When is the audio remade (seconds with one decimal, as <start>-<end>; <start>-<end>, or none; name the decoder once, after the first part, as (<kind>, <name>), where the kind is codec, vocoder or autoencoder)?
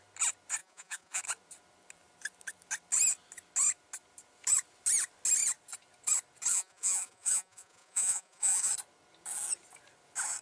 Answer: 0.6-1.2 (vocoder, Vocos); 6.5-8.7